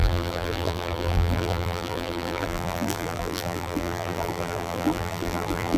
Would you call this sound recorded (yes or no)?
no